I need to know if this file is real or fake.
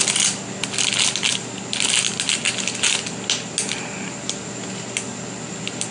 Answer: real